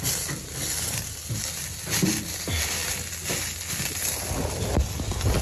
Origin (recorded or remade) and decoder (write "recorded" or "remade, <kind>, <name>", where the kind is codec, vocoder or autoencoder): recorded